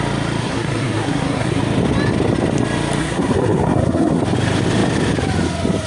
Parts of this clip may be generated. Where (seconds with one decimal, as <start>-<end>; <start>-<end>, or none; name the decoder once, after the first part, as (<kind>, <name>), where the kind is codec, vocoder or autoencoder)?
0.4-1.6 (codec, SNAC); 3.0-4.2